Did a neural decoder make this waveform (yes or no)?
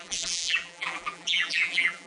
yes